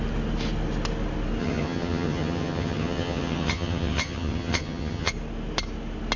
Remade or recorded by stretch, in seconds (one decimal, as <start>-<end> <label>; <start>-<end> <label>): 0.0-1.4 recorded; 1.4-5.1 remade; 5.1-6.2 recorded